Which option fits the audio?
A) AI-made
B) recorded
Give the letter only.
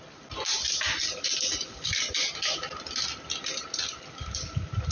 B